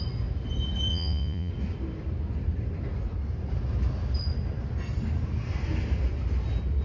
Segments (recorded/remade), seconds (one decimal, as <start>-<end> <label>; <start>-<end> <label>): 0.0-0.9 recorded; 0.9-1.5 remade; 1.5-6.8 recorded